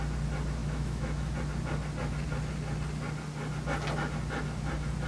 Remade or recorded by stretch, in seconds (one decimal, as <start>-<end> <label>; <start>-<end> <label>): 0.0-0.6 recorded; 0.6-1.3 remade; 1.3-5.1 recorded